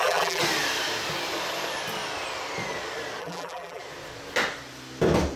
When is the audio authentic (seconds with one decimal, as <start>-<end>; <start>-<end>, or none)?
0.4-3.2; 3.8-5.4